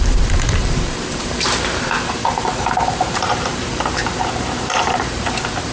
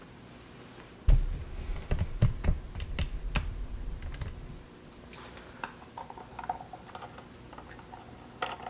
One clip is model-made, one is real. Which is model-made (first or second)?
first